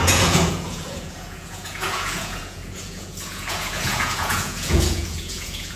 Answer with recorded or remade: remade